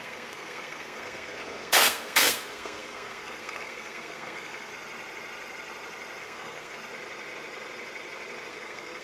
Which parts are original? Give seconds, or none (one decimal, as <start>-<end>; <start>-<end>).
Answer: 4.7-6.2; 6.8-8.5